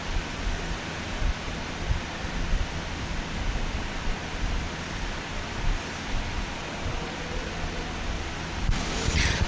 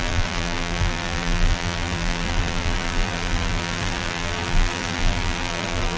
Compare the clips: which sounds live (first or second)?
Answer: first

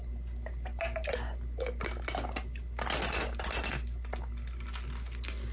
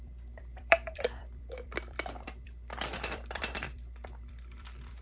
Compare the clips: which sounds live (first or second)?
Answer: first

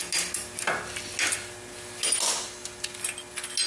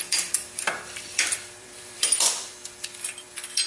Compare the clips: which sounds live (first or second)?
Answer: first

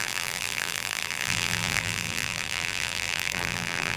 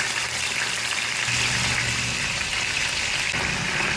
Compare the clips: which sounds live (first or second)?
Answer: second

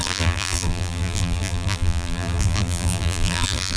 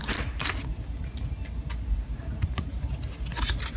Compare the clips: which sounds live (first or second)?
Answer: second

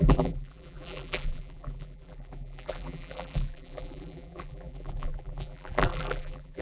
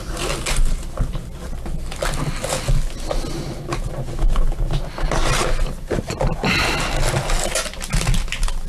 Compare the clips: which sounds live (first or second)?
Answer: second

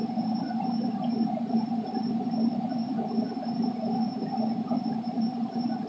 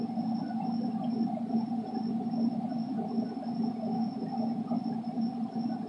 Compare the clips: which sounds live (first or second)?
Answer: second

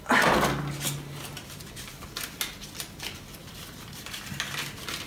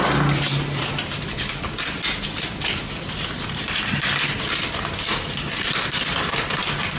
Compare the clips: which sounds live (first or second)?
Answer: first